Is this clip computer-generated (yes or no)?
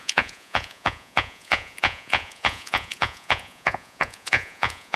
yes